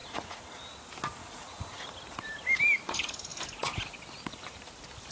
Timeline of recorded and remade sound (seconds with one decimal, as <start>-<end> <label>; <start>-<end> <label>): 0.0-0.6 remade; 0.6-1.2 recorded; 1.2-1.9 remade; 1.9-5.1 recorded

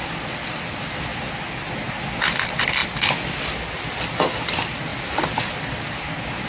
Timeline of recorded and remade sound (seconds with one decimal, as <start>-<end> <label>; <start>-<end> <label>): 0.0-6.5 recorded

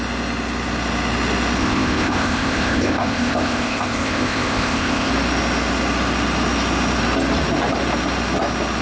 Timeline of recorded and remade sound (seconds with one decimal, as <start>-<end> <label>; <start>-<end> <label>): 0.0-1.6 recorded; 1.6-5.1 remade; 5.1-8.8 recorded

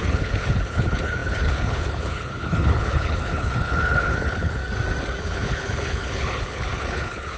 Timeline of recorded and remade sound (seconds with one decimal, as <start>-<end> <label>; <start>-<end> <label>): 0.0-4.6 remade; 4.6-5.2 recorded; 5.2-7.4 remade

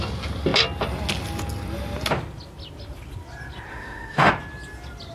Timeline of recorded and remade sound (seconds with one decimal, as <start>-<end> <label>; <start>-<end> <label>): 0.0-3.7 recorded; 3.7-4.3 remade; 4.3-5.1 recorded